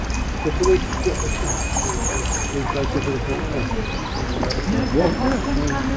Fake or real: real